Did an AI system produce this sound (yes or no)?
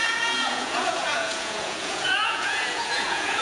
yes